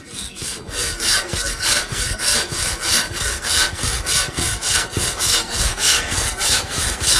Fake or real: fake